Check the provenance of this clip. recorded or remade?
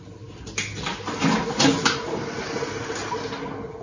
recorded